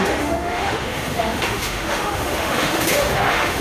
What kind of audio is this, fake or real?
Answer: fake